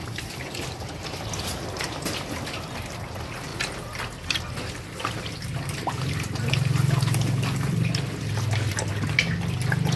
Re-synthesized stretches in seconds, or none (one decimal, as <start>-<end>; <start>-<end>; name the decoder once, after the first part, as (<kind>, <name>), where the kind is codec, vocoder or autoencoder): none

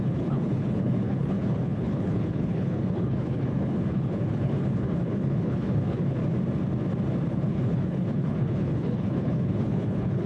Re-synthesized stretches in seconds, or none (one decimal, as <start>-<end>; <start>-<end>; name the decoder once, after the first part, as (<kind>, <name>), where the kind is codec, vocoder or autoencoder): 0.0-6.2 (codec, HILCodec); 7.3-10.3

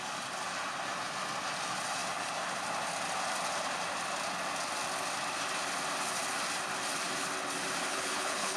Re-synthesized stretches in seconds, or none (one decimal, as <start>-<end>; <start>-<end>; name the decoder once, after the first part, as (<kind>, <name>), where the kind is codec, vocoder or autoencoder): 7.9-8.6 (codec, HILCodec)

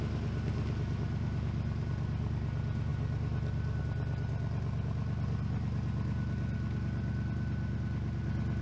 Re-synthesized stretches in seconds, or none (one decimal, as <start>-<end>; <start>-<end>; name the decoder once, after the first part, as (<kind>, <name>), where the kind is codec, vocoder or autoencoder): none